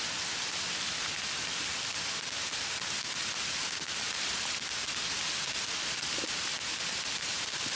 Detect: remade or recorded recorded